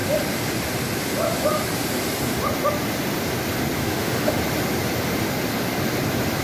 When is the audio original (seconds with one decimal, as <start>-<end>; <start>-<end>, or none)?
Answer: 0.0-3.8; 4.4-6.4